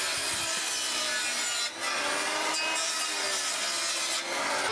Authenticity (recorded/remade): recorded